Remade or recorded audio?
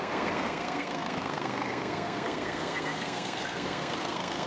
remade